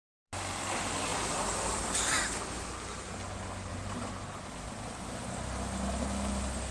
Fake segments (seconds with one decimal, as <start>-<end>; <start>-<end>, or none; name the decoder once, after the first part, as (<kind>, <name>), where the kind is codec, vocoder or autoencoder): none